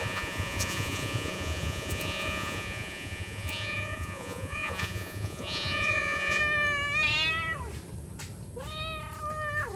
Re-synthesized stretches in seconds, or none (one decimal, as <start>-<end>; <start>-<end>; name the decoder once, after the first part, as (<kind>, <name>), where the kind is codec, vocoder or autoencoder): 0.0-6.4 (vocoder, Vocos)